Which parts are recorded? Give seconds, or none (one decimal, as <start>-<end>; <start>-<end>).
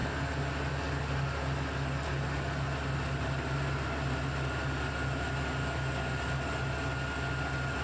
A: 0.0-7.8